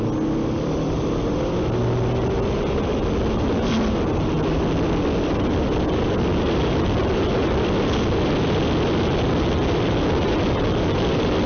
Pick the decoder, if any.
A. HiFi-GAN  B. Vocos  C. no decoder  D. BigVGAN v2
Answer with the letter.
C